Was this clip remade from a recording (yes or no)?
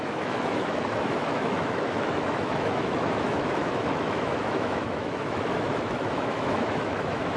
yes